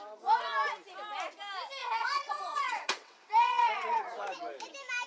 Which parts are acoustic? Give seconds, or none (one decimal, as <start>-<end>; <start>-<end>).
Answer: 0.0-1.8; 4.0-5.1